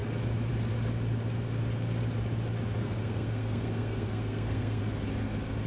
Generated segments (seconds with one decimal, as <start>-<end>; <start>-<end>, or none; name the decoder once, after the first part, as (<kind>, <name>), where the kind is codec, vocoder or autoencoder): 2.8-4.8 (codec, SNAC)